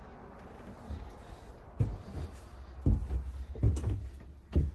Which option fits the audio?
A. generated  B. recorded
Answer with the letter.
B